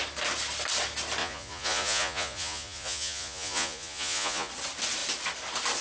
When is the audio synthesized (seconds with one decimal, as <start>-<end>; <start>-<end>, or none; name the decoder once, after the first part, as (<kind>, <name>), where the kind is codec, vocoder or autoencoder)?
1.2-4.5 (vocoder, Vocos)